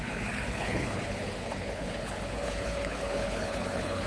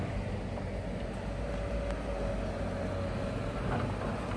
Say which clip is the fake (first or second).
first